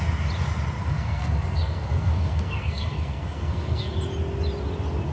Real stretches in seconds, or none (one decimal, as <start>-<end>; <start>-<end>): 0.0-0.8; 3.9-5.1